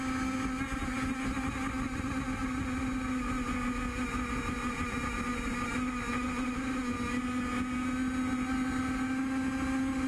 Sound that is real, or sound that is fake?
real